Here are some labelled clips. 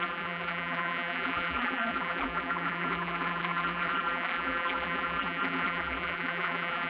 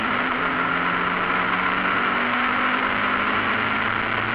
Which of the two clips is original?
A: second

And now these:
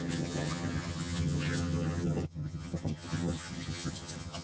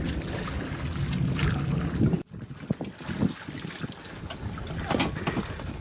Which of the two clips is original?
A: second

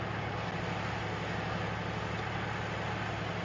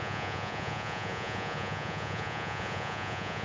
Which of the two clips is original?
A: first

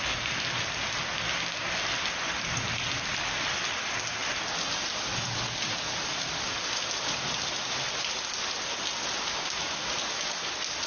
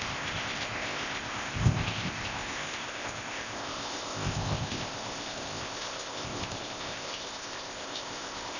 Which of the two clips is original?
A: first